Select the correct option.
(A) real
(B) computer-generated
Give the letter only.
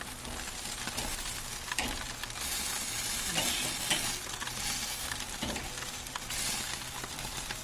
A